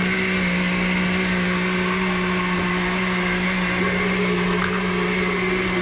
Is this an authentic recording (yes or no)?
yes